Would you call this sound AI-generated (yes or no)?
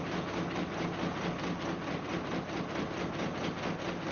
no